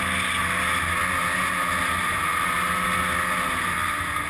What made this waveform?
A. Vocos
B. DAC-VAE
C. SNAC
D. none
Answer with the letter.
D